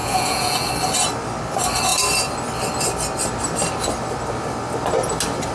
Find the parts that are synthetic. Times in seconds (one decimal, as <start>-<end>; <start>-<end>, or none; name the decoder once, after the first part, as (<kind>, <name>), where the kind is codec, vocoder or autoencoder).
0.0-0.7 (vocoder, Vocos)